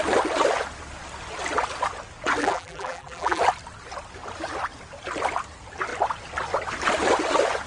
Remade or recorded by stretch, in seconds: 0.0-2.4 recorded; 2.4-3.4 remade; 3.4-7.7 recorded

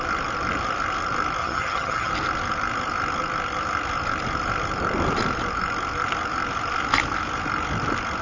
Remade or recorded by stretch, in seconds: 0.0-1.4 recorded; 1.4-2.1 remade; 2.1-8.2 recorded